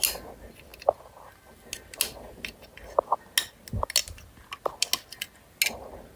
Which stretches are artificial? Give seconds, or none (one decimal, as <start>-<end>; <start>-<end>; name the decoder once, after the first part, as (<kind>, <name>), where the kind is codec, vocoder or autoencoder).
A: none